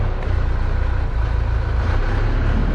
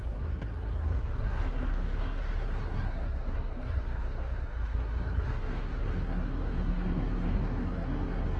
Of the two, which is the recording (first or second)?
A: first